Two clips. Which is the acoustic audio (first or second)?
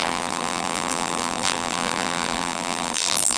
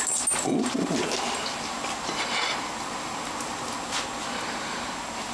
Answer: second